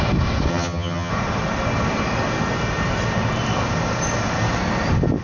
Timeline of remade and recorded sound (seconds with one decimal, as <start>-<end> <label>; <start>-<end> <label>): 0.0-0.5 recorded; 0.5-1.1 remade; 1.1-5.2 recorded